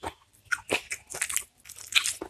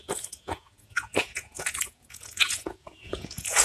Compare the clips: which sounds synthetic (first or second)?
second